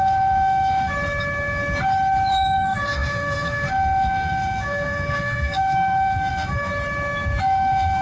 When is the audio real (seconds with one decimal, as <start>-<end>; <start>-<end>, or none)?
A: 0.9-2.3; 6.7-7.4